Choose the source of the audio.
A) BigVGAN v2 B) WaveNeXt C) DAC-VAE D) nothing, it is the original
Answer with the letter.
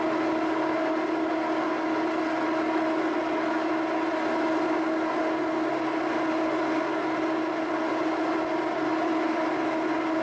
D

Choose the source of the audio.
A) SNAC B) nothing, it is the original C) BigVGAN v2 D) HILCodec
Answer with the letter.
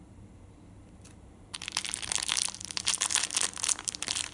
C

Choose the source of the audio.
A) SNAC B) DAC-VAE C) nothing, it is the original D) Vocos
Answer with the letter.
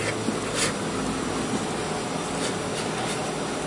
C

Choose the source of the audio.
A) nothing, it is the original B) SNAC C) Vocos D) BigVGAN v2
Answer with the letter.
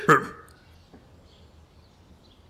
A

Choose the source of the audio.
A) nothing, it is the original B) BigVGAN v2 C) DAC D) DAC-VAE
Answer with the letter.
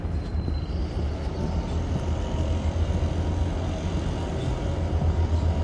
A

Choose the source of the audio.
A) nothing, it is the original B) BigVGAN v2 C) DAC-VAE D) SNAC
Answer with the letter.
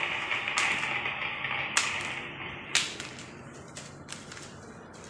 A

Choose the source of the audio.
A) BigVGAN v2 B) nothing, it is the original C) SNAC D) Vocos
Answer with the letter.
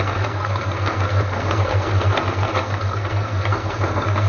C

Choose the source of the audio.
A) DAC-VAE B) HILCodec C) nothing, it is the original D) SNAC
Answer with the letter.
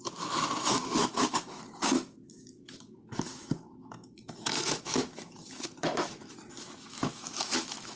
A